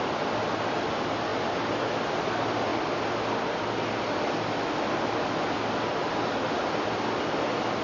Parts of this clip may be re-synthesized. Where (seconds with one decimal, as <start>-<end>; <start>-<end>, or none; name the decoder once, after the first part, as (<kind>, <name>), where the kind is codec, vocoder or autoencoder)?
none